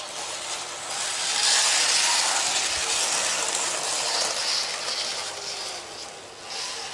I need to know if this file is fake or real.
real